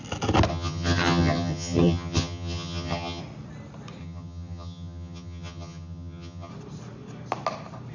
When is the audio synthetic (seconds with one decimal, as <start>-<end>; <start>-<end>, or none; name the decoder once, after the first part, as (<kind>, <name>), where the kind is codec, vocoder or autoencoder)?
0.5-3.2 (vocoder, HiFi-GAN); 4.0-6.5